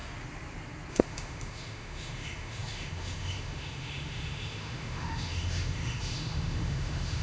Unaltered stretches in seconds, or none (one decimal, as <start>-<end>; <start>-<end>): 0.0-0.9